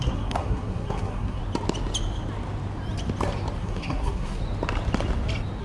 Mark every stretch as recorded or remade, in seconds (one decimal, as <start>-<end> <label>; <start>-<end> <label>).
0.0-1.4 remade; 1.4-3.6 recorded; 3.6-4.4 remade; 4.4-5.6 recorded